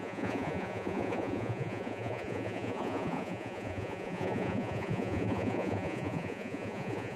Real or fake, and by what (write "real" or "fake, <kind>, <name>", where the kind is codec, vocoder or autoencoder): fake, vocoder, Vocos